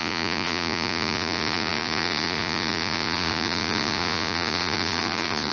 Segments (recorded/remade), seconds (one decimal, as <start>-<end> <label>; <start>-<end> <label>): 0.0-5.5 remade